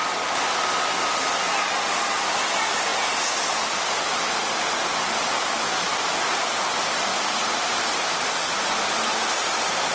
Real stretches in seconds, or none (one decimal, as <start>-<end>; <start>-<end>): 0.0-9.9